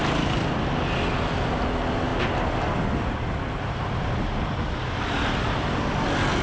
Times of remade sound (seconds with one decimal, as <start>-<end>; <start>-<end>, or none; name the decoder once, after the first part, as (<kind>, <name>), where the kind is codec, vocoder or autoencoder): none